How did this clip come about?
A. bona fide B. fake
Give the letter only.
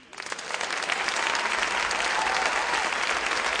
A